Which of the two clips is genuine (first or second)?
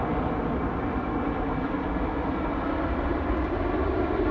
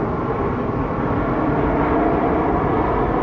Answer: second